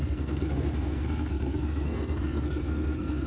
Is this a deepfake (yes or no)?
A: yes